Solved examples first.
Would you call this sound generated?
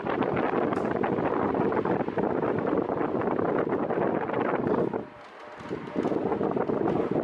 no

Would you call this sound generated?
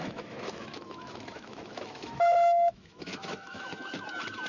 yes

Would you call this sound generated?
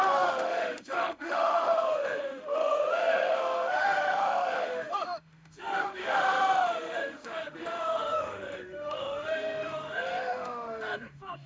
yes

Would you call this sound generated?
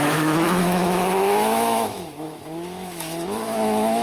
yes